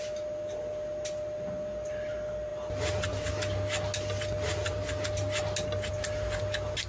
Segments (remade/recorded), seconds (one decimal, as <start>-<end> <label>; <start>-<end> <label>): 0.0-6.9 recorded